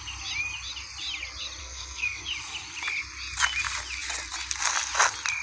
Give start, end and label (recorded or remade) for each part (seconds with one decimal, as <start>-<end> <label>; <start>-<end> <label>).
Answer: 0.0-1.6 recorded; 1.6-2.2 remade; 2.2-5.4 recorded